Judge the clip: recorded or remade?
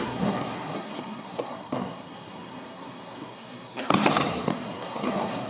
remade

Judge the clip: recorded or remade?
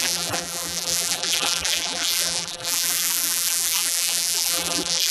remade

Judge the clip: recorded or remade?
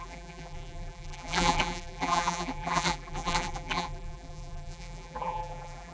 remade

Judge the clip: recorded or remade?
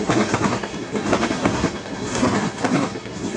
remade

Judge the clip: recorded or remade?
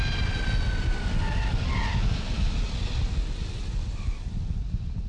recorded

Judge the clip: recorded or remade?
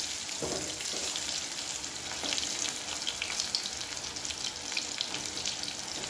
recorded